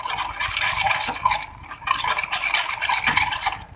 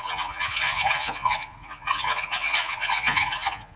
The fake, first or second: second